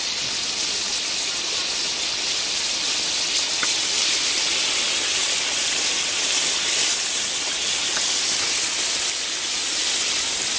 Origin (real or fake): real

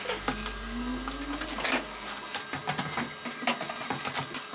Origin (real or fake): real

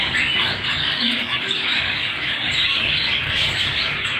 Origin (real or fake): fake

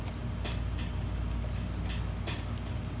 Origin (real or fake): real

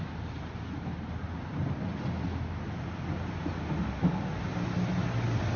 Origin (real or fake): real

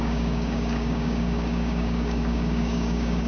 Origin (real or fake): fake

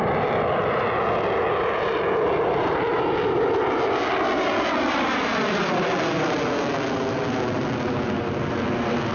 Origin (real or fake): real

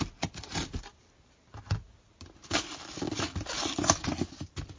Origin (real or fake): real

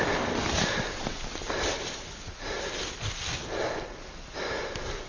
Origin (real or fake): real